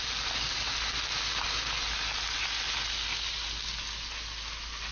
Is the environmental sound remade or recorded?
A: recorded